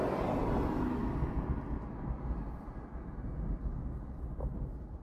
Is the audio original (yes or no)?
yes